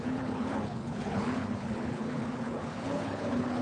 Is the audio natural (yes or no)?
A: no